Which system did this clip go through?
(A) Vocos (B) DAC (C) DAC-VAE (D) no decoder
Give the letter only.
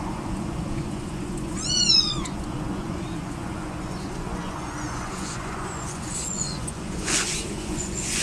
A